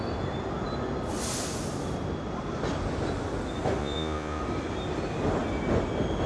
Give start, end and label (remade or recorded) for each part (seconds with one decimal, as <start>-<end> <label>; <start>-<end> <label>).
0.0-3.8 recorded; 3.8-4.4 remade; 4.4-6.3 recorded